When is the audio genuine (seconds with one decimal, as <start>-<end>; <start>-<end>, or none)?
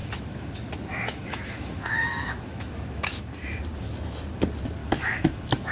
0.5-0.9; 3.4-4.8